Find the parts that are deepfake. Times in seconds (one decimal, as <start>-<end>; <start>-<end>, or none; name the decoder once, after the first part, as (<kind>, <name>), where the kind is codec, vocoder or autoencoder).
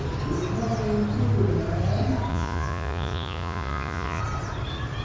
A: 2.3-4.2 (vocoder, Vocos)